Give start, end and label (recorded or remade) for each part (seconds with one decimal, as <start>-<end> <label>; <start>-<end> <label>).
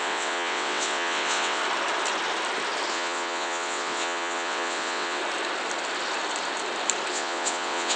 0.0-1.6 remade; 1.6-2.9 recorded; 2.9-5.2 remade; 5.2-7.1 recorded; 7.1-8.0 remade